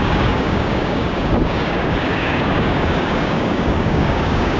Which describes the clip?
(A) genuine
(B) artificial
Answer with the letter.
B